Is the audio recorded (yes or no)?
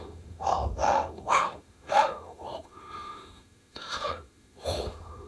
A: no